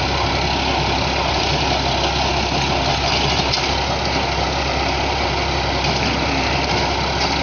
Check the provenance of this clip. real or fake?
real